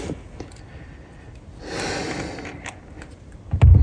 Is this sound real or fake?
real